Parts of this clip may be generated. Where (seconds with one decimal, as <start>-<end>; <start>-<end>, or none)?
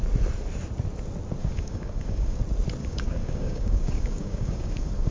1.4-2.4; 2.8-5.1